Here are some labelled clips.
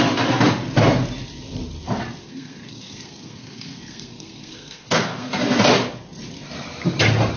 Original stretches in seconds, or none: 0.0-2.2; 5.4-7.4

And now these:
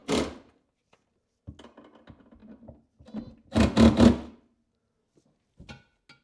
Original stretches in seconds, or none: 0.0-6.2